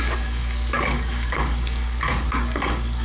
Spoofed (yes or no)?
yes